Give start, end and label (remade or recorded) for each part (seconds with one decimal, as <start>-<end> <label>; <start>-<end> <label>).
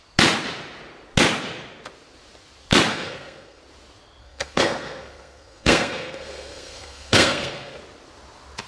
0.0-2.9 recorded; 2.9-3.6 remade; 3.6-4.2 recorded; 4.2-7.8 remade; 7.8-8.7 recorded